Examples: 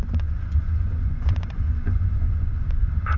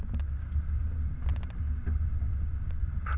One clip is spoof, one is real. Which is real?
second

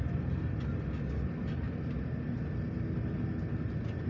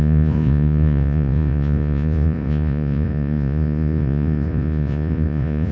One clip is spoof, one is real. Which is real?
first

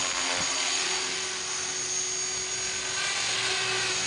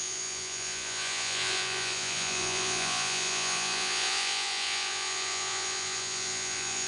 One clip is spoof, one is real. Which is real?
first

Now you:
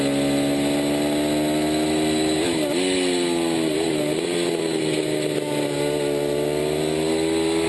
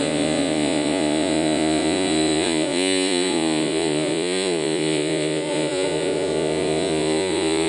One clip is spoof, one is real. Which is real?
first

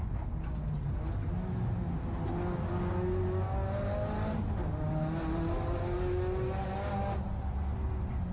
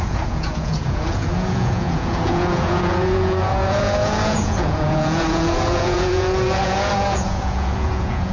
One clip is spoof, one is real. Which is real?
first